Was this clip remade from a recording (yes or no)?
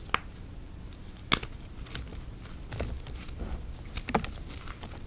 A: no